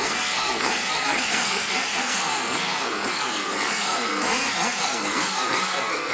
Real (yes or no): no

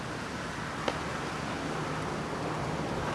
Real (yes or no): yes